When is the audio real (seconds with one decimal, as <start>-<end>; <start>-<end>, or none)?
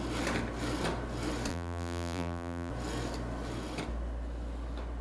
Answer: 0.0-1.5; 2.7-5.0